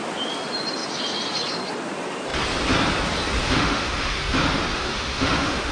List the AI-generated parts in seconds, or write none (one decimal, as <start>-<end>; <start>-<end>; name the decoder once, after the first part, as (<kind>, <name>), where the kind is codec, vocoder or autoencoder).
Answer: 3.4-4.2 (autoencoder, DAC-VAE); 4.7-5.7